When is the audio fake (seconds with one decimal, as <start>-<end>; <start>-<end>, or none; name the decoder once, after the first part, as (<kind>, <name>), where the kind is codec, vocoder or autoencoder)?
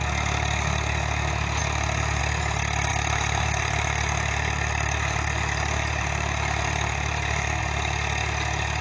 2.9-7.6 (vocoder, BigVGAN v2)